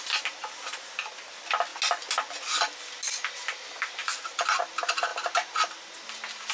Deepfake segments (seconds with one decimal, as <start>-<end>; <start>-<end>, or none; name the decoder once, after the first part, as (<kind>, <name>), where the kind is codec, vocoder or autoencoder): 4.0-4.6 (vocoder, BigVGAN v2)